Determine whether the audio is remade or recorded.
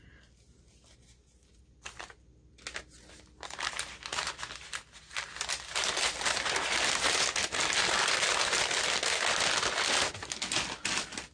recorded